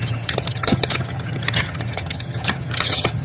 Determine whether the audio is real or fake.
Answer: fake